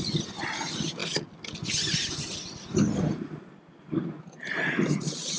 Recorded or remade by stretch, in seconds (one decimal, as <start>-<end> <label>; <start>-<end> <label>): 0.0-5.4 recorded